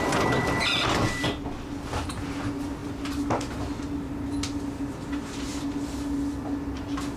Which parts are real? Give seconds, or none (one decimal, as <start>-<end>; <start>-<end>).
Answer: 0.0-7.2